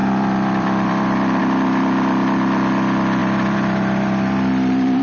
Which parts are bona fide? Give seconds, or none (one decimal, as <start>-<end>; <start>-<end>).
1.4-3.2